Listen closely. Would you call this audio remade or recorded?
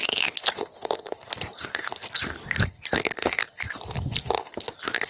recorded